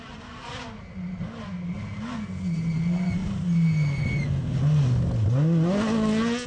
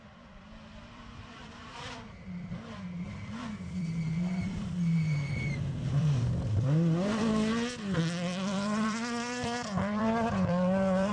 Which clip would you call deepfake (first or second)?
second